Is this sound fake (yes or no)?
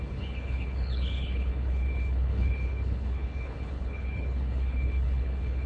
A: yes